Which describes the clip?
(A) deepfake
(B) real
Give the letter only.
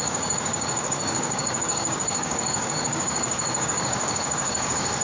A